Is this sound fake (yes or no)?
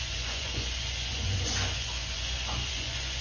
yes